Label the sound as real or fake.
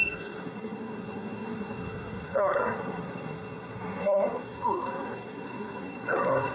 fake